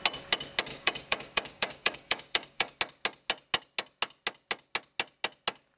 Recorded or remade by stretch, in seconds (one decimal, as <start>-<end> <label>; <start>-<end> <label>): 0.0-0.7 recorded; 0.7-2.8 remade; 2.8-5.8 recorded